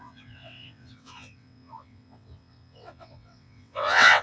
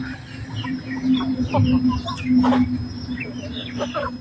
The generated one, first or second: first